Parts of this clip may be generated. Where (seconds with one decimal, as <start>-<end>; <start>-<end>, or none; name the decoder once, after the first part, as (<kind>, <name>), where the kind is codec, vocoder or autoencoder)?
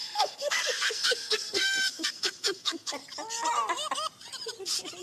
0.0-3.0 (codec, SNAC)